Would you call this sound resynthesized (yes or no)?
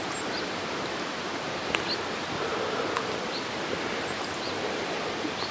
no